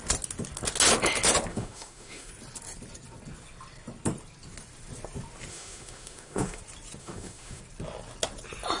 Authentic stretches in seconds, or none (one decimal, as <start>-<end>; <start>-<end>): 0.0-1.5; 2.3-5.5; 6.6-7.0; 7.6-8.8